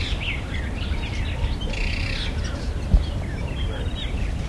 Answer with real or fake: real